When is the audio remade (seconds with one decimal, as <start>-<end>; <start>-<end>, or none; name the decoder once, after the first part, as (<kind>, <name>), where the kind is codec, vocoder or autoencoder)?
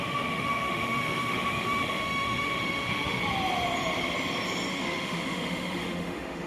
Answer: 0.0-3.2 (autoencoder, DAC-VAE); 4.7-6.5